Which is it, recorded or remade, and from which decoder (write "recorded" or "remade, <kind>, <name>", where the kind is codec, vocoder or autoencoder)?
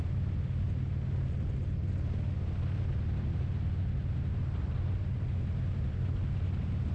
recorded